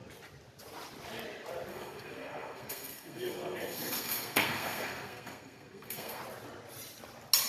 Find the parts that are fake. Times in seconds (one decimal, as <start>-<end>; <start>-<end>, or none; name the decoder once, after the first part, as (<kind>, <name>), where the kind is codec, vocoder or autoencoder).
1.7-6.2 (codec, SNAC)